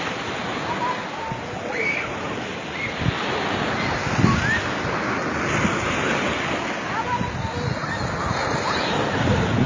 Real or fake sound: real